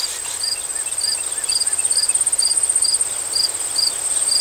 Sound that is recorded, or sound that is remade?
recorded